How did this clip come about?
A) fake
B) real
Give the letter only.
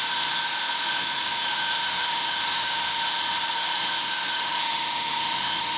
A